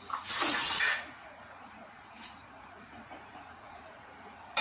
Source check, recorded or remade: remade